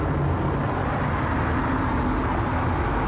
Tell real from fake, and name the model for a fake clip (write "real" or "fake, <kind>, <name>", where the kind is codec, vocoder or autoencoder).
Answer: real